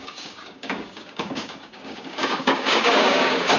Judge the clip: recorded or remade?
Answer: remade